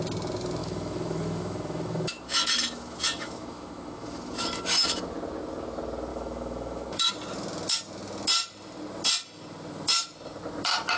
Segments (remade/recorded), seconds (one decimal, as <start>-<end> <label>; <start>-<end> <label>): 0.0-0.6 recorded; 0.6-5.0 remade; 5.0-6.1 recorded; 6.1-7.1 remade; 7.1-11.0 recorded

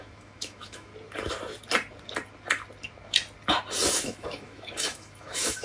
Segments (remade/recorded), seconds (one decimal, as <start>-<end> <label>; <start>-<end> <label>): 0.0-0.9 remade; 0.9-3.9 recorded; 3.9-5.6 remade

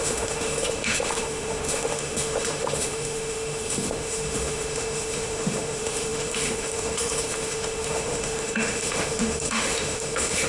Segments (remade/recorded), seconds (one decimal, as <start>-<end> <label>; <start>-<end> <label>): 0.0-10.5 remade

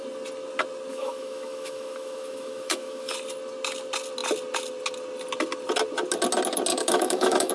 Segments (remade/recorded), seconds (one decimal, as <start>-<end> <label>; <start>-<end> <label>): 0.0-0.9 recorded; 0.9-3.1 remade; 3.1-6.7 recorded; 6.7-7.5 remade

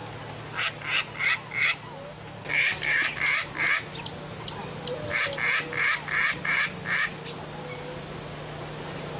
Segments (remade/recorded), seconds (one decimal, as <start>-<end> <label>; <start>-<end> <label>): 0.0-9.2 recorded

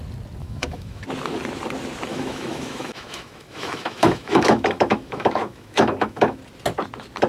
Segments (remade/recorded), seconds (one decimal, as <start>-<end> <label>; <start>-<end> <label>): 0.0-0.4 recorded; 0.4-1.0 remade; 1.0-2.1 recorded; 2.1-6.4 remade; 6.4-7.3 recorded

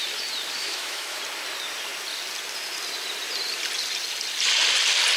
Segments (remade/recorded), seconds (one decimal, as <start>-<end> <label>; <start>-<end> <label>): 0.0-0.6 recorded; 0.6-1.2 remade; 1.2-5.2 recorded